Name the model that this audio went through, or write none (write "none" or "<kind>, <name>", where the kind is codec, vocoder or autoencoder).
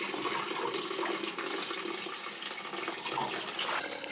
none